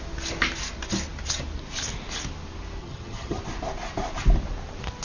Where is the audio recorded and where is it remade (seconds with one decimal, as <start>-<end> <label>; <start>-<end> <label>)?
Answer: 0.0-2.8 recorded; 2.8-3.4 remade; 3.4-5.0 recorded